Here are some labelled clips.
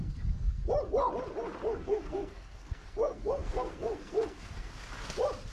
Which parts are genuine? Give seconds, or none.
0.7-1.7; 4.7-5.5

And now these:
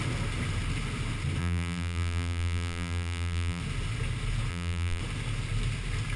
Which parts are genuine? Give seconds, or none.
0.0-1.4; 3.6-4.5; 5.0-6.2